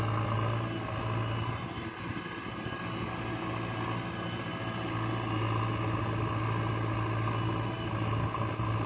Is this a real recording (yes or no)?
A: yes